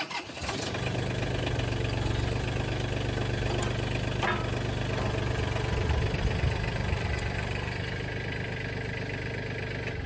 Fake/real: real